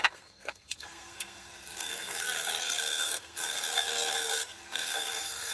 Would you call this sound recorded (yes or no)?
no